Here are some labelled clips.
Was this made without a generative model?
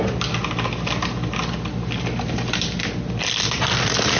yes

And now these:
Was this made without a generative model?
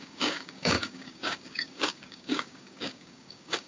no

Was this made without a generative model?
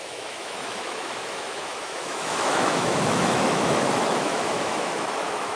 no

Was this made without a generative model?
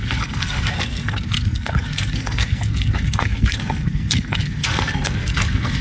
no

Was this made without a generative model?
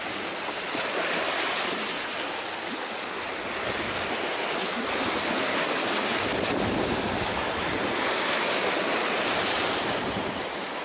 yes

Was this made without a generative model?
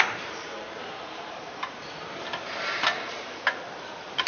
no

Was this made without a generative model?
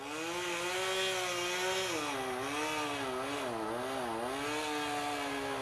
yes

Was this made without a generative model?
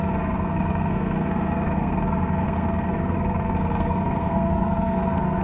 no